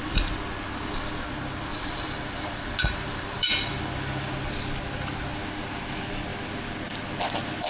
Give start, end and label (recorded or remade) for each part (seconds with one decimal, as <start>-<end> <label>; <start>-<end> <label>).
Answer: 0.0-1.7 recorded; 1.7-3.8 remade; 3.8-7.7 recorded